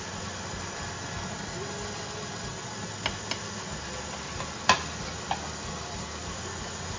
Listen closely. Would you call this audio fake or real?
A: real